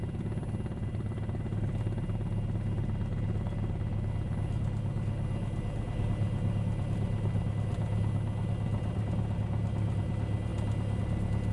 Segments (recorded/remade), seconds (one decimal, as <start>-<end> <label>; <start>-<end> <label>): 0.0-11.5 recorded